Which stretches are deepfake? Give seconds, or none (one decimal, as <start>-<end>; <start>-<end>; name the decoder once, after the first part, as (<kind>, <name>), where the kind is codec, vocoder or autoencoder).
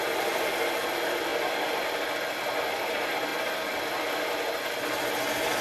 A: 3.3-4.6 (vocoder, BigVGAN v2)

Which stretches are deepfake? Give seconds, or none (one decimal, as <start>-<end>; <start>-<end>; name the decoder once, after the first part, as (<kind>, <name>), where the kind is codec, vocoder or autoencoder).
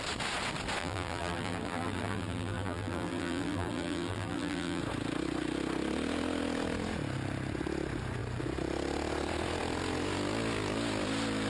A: 0.8-4.8 (vocoder, BigVGAN v2)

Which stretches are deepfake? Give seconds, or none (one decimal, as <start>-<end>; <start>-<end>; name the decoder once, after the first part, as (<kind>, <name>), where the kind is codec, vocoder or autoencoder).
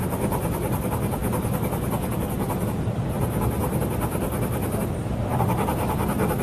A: 0.0-1.2 (vocoder, BigVGAN v2); 4.9-6.4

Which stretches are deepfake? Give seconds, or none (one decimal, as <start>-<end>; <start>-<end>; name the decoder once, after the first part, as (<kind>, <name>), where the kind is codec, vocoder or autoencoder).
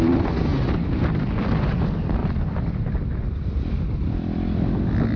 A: 0.0-5.2 (vocoder, BigVGAN v2)